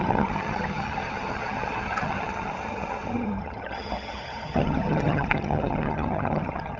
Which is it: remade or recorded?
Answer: remade